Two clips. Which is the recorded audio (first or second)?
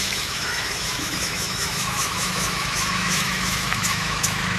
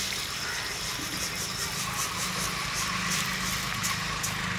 second